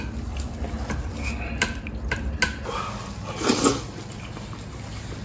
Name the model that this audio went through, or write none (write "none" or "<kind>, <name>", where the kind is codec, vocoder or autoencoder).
none